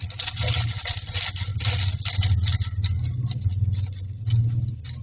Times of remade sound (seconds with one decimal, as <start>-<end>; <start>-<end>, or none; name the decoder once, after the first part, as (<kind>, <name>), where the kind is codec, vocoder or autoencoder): none